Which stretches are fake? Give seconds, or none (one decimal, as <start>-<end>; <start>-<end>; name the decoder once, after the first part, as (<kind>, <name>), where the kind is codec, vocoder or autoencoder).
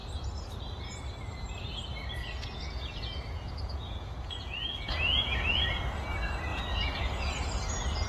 2.2-5.8 (vocoder, Vocos); 6.5-7.3